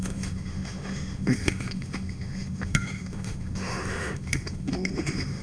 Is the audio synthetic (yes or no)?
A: yes